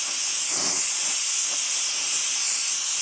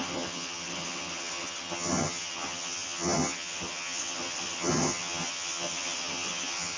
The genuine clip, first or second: first